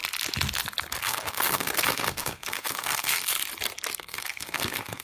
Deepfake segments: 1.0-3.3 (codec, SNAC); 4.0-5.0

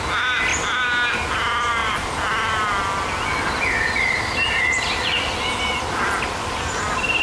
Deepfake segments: none

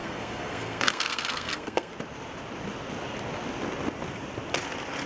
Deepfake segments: 0.0-1.9 (codec, SNAC)